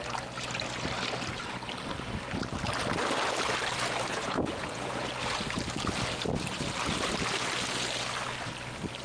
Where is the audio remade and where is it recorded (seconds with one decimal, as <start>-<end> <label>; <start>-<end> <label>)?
0.0-4.1 recorded; 4.1-5.1 remade; 5.1-9.0 recorded